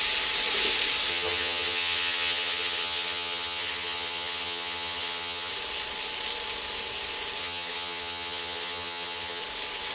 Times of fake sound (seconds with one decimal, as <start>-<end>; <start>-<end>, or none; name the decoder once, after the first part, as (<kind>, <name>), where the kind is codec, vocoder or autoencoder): 1.1-5.5 (vocoder, HiFi-GAN); 7.4-9.4

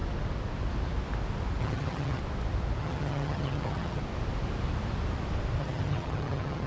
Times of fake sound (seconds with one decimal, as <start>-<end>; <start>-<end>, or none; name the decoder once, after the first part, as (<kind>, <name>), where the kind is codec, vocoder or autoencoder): 1.6-2.2 (vocoder, HiFi-GAN); 2.8-4.0; 5.6-6.7

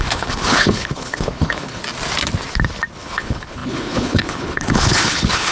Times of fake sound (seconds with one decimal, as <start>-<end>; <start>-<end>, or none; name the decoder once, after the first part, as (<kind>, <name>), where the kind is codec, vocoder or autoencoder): 0.0-1.8 (codec, HILCodec); 2.9-5.5

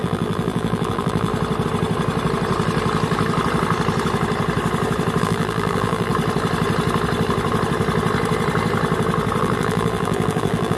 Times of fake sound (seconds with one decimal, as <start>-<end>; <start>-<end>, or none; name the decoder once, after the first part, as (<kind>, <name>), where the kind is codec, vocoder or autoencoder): 0.0-1.3 (vocoder, BigVGAN v2); 5.2-6.1; 9.4-10.8

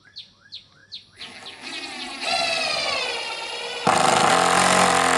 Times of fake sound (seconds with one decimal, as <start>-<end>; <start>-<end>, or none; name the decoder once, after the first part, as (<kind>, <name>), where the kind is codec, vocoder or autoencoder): none

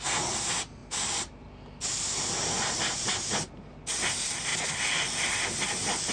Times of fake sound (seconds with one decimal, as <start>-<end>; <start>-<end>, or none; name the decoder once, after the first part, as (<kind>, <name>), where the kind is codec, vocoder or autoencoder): none

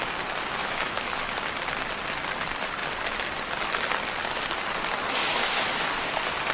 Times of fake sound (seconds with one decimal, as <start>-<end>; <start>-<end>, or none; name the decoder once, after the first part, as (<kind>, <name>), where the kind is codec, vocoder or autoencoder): 0.6-1.3 (autoencoder, DAC-VAE); 5.2-5.9